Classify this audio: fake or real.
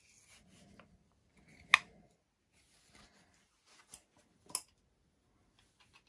real